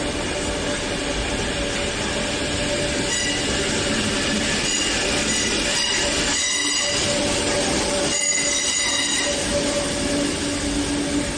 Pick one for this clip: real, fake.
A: real